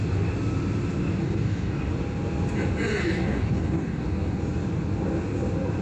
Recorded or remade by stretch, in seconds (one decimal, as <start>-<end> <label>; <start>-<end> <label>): 0.0-1.2 recorded; 1.2-1.9 remade; 1.9-3.0 recorded; 3.0-4.4 remade; 4.4-5.8 recorded